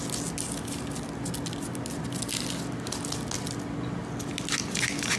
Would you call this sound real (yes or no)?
yes